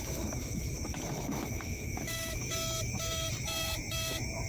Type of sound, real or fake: fake